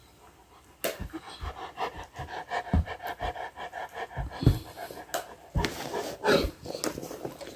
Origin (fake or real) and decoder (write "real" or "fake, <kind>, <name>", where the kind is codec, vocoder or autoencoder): real